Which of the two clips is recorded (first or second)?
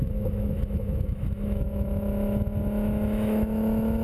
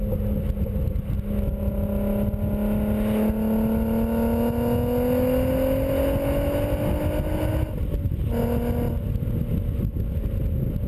second